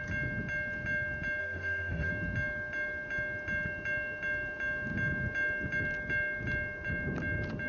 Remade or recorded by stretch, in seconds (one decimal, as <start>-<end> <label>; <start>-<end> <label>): 0.0-1.4 recorded; 1.4-2.1 remade; 2.1-7.7 recorded